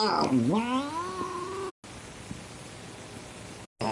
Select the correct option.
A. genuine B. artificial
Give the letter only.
A